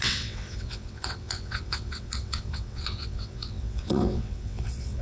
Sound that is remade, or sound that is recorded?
remade